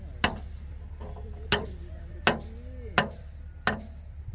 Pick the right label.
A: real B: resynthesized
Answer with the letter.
A